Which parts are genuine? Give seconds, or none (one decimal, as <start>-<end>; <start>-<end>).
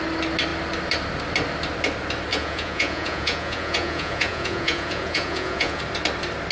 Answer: 0.0-2.3; 5.8-6.5